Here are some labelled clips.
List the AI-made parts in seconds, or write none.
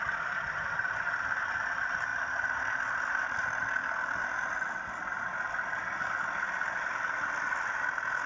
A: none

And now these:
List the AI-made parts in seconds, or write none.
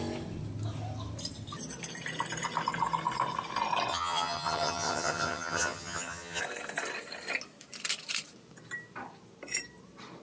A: 3.9-6.4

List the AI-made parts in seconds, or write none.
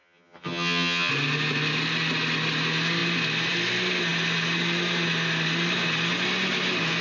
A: 0.0-1.1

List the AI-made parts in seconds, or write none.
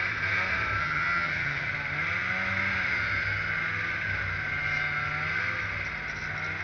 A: 0.8-1.7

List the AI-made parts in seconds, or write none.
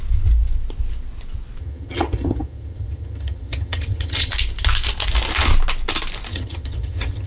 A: 1.6-4.3; 6.3-7.3